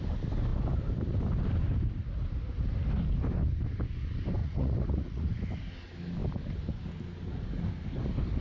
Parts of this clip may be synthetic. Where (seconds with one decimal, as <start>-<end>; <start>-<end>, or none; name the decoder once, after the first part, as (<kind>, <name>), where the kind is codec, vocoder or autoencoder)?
4.4-5.3 (vocoder, Vocos)